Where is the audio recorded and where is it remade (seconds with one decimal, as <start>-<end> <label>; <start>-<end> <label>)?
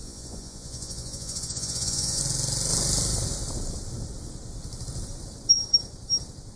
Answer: 0.0-2.2 remade; 2.2-6.6 recorded